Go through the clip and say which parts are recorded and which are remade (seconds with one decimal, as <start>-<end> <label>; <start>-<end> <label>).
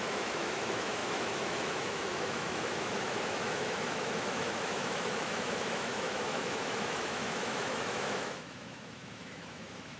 0.0-10.0 remade